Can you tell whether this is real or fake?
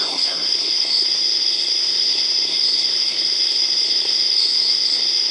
fake